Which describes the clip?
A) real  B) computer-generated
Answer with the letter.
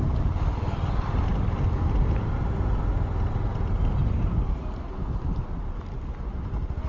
A